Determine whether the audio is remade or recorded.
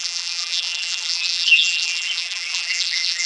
remade